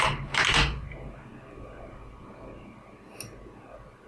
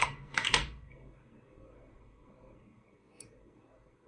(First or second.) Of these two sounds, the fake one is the second